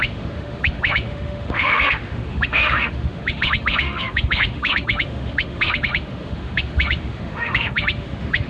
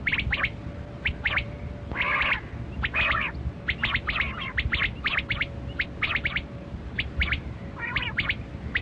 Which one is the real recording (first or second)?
second